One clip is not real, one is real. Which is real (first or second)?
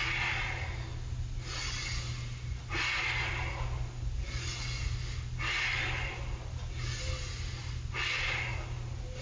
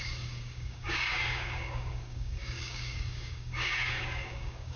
first